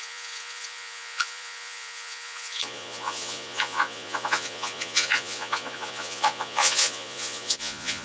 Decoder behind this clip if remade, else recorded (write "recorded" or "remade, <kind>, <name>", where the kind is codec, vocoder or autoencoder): remade, vocoder, Vocos